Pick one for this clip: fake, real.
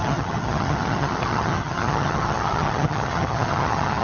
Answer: fake